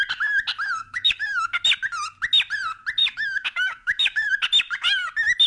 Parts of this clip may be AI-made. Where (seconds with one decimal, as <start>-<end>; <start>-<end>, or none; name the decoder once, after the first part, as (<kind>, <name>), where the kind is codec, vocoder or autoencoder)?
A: 0.8-1.5 (autoencoder, DAC-VAE); 3.0-4.3